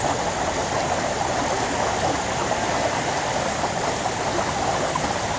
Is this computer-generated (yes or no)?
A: no